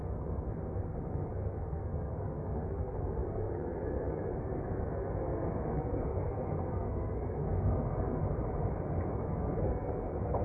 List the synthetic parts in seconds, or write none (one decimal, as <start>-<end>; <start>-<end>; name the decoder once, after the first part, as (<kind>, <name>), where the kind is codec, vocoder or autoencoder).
0.0-8.2 (codec, SNAC); 9.1-10.4